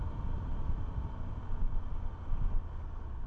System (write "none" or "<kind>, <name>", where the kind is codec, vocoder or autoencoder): none